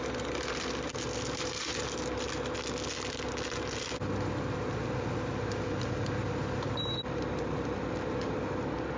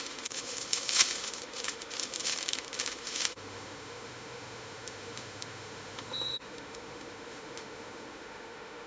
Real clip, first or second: first